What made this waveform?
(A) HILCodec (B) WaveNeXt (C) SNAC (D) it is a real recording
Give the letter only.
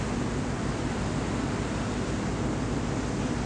D